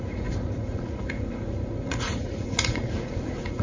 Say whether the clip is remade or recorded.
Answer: remade